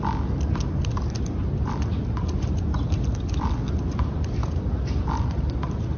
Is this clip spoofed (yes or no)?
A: no